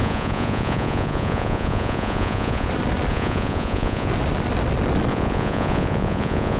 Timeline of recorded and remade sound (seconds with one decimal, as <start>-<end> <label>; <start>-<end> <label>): 0.0-2.7 remade; 2.7-3.1 recorded; 3.1-4.1 remade; 4.1-5.1 recorded; 5.1-6.6 remade